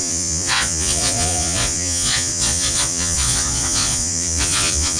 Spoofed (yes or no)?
yes